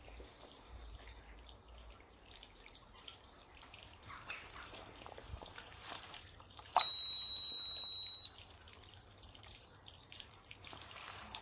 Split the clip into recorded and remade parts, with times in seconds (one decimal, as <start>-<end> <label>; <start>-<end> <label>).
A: 0.0-6.9 remade; 6.9-8.4 recorded; 8.4-11.4 remade